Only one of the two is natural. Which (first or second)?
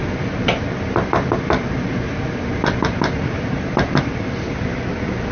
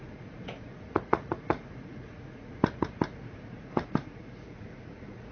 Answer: first